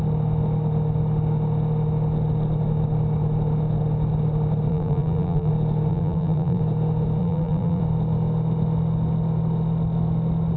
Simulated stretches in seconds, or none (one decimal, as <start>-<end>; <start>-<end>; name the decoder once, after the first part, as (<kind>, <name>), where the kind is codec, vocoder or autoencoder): 4.7-5.5 (vocoder, BigVGAN v2); 5.9-6.6; 7.2-7.8